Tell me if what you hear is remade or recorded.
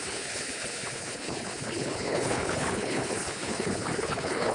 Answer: remade